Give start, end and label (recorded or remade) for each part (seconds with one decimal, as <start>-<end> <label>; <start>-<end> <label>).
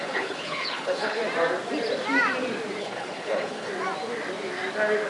0.0-1.2 remade; 1.2-2.8 recorded; 2.8-3.7 remade; 3.7-5.1 recorded